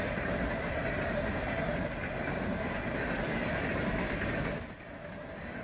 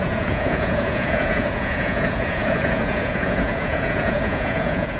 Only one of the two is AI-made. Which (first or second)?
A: second